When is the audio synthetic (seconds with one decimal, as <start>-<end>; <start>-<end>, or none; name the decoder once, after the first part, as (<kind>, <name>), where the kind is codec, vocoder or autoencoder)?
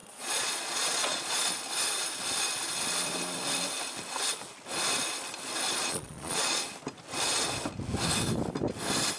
0.0-1.5 (vocoder, Vocos); 5.8-6.6